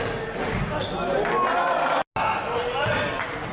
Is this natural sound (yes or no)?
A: yes